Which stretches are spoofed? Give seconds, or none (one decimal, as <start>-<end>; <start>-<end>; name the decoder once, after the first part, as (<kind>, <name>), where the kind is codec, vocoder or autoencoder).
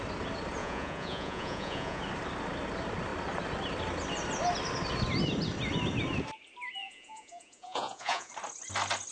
0.6-2.0 (vocoder, Vocos); 6.8-8.3